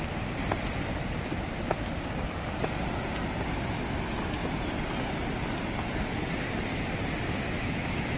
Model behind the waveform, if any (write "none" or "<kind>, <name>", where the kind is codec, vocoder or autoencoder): none